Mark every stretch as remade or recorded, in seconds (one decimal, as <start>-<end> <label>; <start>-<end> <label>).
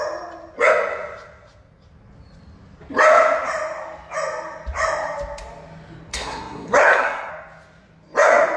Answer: 0.0-6.1 recorded; 6.1-7.3 remade; 7.3-8.6 recorded